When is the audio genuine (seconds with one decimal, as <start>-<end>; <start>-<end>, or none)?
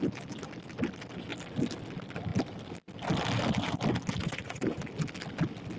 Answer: 0.0-4.2; 4.8-5.8